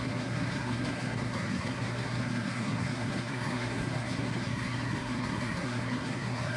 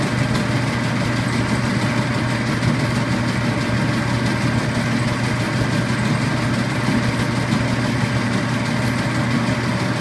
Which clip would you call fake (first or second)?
first